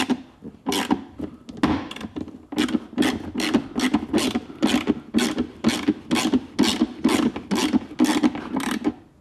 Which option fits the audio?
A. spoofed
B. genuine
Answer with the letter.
B